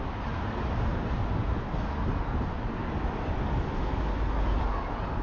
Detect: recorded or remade recorded